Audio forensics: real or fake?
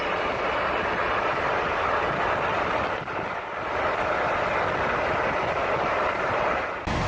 real